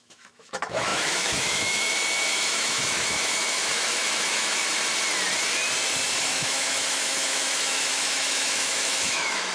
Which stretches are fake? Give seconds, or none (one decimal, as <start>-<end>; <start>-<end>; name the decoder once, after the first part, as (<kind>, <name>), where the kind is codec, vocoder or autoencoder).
0.0-4.6 (autoencoder, DAC-VAE); 6.2-9.5